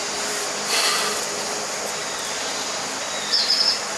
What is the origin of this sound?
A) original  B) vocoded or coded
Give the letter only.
A